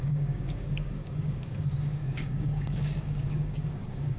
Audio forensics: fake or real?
fake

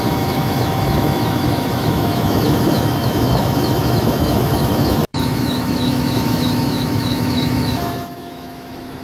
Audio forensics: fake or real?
fake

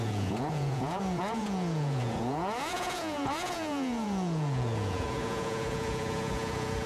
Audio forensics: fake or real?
fake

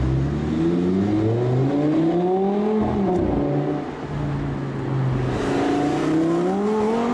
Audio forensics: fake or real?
real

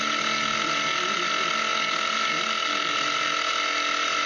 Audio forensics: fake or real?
real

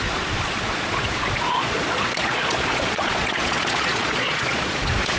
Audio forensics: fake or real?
fake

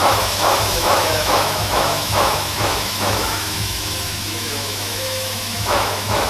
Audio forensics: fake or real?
fake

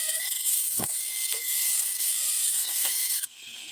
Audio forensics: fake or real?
fake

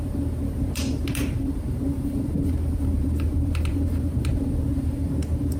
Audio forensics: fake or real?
fake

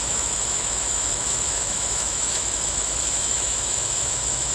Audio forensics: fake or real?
fake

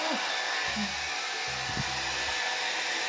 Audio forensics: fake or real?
real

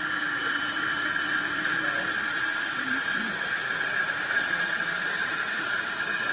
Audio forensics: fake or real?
fake